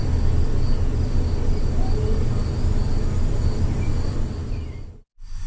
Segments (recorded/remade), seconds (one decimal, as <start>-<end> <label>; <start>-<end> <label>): 0.0-5.5 recorded